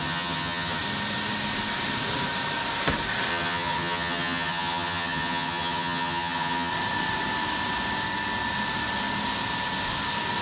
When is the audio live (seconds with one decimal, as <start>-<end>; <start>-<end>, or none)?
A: 0.8-3.3; 6.7-10.4